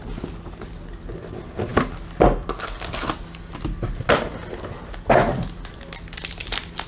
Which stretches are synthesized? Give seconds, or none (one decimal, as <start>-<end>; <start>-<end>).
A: none